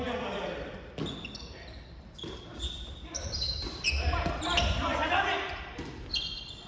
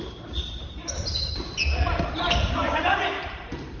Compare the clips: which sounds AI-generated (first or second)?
second